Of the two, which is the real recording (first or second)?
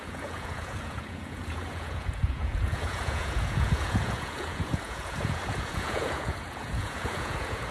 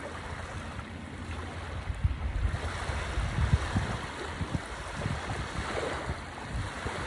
second